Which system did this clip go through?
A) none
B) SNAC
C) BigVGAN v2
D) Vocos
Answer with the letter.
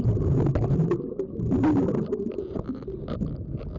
A